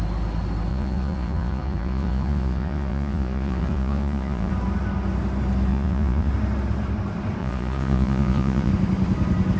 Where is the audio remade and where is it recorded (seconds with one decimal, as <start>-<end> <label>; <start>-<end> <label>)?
0.0-0.7 recorded; 0.7-4.5 remade; 4.5-5.7 recorded; 5.7-6.3 remade; 6.3-7.4 recorded; 7.4-8.7 remade; 8.7-9.6 recorded